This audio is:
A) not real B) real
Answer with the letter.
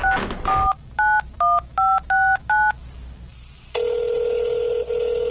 B